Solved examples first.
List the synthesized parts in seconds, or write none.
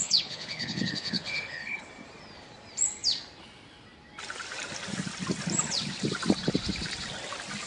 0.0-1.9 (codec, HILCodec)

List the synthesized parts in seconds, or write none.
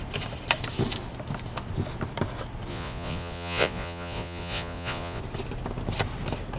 2.7-5.2 (vocoder, Vocos)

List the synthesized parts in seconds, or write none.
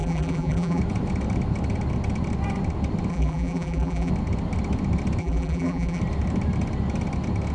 0.0-0.8 (vocoder, BigVGAN v2); 3.1-4.1; 5.2-6.0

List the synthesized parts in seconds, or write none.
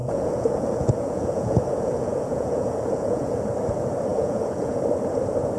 0.0-3.4 (vocoder, Vocos); 4.1-4.8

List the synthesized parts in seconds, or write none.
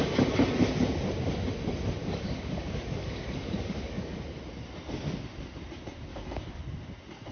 2.0-4.2 (codec, DAC); 6.1-6.6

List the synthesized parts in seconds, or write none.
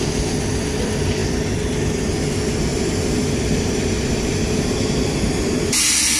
2.7-5.8 (vocoder, BigVGAN v2)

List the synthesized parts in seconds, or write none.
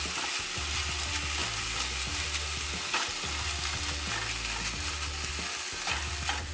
none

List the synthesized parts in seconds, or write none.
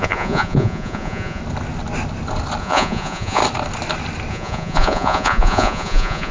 0.0-1.4 (vocoder, Vocos); 2.6-3.4; 4.3-6.3